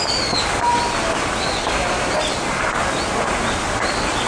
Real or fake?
real